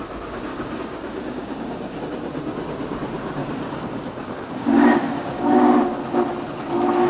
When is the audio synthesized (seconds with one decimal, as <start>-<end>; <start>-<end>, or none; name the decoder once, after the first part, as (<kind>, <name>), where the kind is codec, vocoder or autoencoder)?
0.5-2.0 (codec, DAC); 3.4-5.8